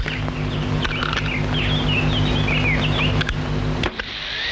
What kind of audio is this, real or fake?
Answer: real